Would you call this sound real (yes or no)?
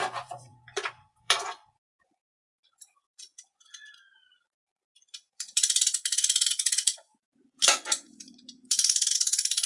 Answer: no